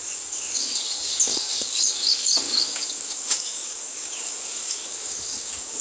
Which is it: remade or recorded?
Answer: remade